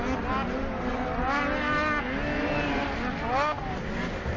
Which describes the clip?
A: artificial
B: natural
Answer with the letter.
B